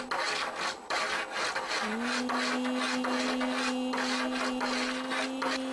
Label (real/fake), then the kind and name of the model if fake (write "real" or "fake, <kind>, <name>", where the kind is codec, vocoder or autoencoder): real